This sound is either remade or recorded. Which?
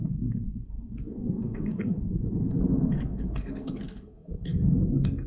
remade